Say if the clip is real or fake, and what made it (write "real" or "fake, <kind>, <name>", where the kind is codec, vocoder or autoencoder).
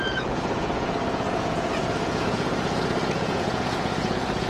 fake, vocoder, Vocos